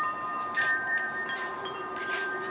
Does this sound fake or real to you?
fake